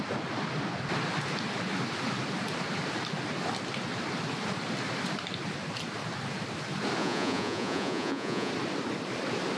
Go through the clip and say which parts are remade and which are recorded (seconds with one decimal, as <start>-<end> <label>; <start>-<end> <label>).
0.0-7.0 recorded; 7.0-8.5 remade; 8.5-9.6 recorded